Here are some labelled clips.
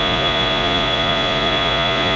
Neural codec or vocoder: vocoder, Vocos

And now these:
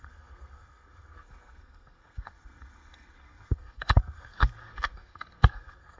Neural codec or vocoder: codec, SNAC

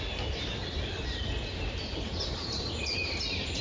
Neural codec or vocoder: none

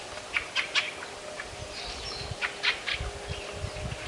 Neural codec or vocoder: none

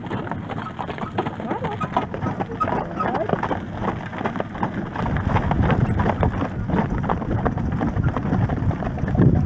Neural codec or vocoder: none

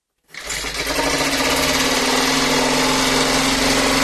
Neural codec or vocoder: none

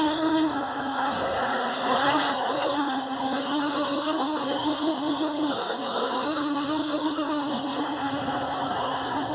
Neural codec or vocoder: codec, SNAC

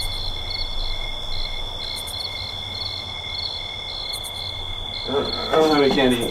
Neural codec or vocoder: none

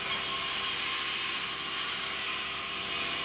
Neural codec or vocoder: none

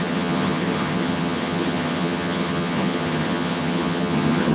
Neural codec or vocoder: vocoder, HiFi-GAN